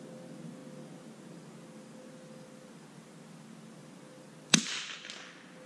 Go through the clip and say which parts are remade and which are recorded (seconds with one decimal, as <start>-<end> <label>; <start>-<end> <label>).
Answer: 0.0-5.7 recorded